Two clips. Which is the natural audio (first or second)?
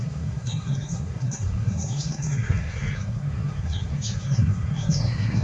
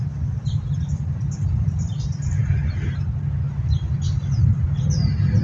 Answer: second